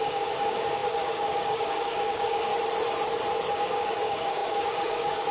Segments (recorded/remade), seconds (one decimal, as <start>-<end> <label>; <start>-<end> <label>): 0.0-2.5 remade; 2.5-3.5 recorded; 3.5-5.3 remade